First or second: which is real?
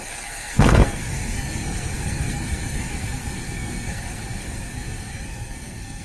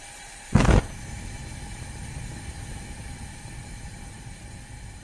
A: second